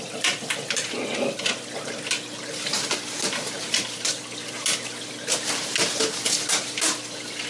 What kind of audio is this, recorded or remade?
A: recorded